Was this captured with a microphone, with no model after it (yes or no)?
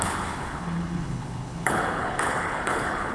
no